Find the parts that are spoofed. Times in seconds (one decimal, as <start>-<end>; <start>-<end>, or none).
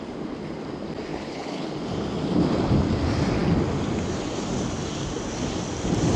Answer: 1.1-1.7